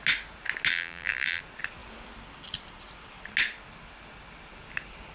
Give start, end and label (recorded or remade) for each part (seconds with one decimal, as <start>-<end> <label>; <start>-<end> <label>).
0.0-0.7 recorded; 0.7-1.4 remade; 1.4-5.1 recorded